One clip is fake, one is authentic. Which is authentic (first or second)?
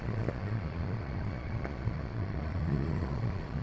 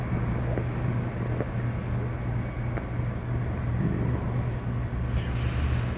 second